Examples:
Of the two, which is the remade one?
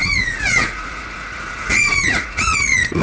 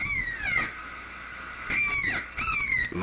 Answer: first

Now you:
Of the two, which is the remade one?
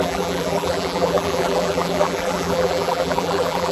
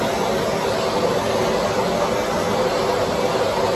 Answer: first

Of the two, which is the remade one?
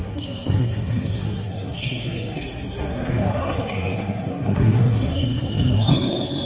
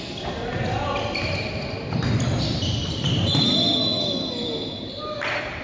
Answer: first